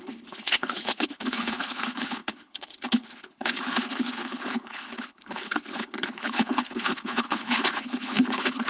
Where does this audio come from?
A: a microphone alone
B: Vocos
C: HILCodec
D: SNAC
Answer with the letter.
C